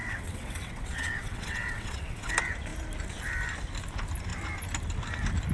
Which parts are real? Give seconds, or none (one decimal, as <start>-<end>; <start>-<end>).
2.3-5.5